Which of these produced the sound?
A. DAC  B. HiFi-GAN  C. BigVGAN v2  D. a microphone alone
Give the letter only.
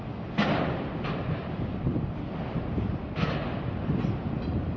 D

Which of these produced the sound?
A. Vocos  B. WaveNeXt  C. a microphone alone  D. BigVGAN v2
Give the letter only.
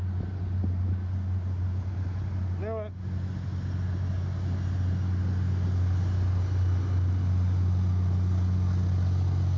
C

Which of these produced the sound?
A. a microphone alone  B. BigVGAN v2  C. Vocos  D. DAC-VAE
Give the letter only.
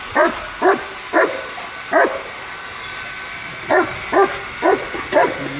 A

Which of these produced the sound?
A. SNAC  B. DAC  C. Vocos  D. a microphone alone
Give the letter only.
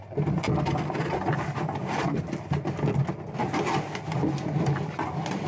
D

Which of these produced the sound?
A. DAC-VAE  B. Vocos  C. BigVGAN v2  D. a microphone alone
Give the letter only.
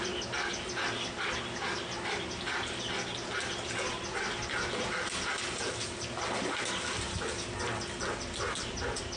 D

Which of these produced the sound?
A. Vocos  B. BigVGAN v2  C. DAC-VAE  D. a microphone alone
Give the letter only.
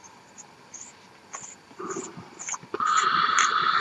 D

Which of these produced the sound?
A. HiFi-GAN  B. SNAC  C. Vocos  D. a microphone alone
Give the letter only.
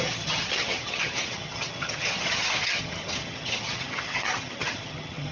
A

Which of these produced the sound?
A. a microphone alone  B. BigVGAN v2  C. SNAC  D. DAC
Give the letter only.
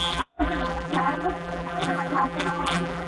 B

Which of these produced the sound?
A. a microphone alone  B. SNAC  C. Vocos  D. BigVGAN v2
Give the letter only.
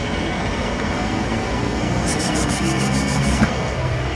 B